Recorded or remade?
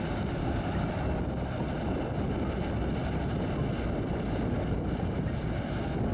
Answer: recorded